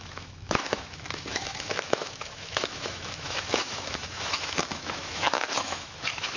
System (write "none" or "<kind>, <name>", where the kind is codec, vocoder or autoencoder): autoencoder, DAC-VAE